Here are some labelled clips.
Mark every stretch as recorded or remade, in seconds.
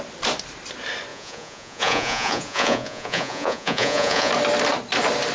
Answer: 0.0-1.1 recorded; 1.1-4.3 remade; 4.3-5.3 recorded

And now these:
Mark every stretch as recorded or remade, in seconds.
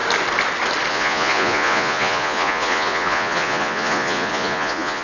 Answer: 0.0-0.9 recorded; 0.9-5.0 remade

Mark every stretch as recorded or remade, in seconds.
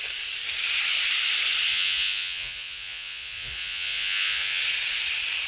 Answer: 0.0-1.7 recorded; 1.7-4.6 remade; 4.6-5.5 recorded